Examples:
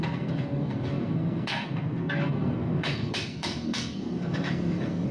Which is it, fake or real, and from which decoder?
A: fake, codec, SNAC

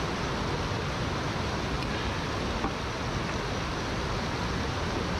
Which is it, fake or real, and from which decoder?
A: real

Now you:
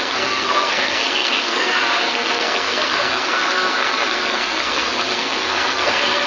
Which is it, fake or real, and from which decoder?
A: fake, codec, SNAC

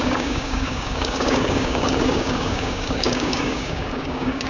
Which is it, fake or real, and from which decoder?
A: fake, codec, DAC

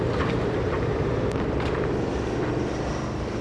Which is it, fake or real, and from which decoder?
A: fake, vocoder, BigVGAN v2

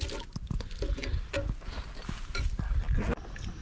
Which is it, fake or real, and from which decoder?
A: real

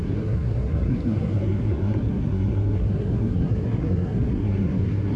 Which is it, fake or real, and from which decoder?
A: fake, codec, SNAC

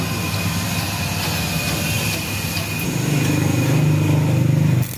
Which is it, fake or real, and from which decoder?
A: real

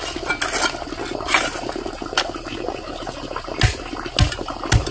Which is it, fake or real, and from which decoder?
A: real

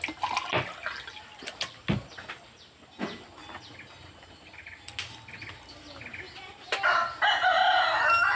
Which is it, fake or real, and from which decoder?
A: real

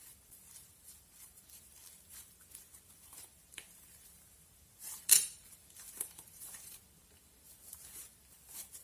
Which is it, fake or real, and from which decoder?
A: fake, vocoder, BigVGAN v2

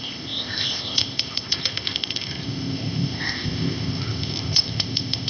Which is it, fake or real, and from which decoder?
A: fake, codec, ZipCodec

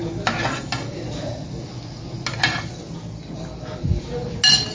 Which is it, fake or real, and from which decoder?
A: real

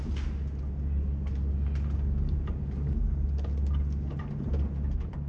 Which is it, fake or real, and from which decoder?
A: real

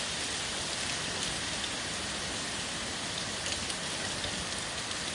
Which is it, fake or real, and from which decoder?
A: real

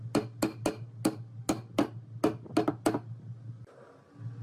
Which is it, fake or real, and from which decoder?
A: real